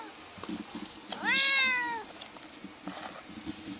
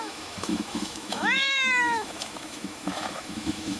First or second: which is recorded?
first